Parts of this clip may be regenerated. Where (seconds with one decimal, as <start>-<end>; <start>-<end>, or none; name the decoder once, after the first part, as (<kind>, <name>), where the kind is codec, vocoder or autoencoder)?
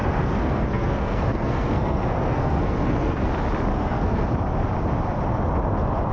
0.0-3.3 (codec, SNAC); 3.7-4.3